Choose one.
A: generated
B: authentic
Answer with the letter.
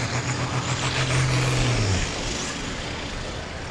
B